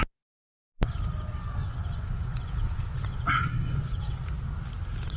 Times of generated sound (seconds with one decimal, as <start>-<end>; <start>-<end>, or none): 1.4-4.2